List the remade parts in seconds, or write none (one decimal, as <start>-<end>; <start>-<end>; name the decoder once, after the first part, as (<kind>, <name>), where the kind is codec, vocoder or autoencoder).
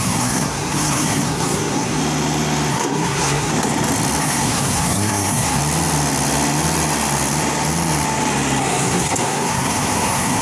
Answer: 0.0-2.0 (codec, SNAC); 2.7-3.5; 4.2-5.6; 8.6-10.4